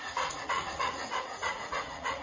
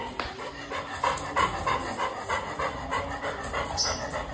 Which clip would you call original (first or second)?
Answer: second